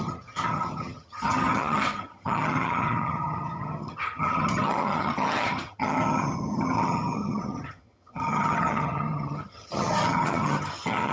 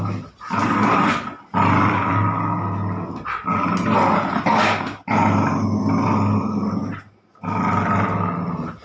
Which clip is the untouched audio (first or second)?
second